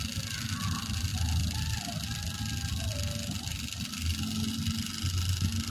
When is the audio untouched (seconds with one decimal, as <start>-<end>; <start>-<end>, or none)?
0.0-5.7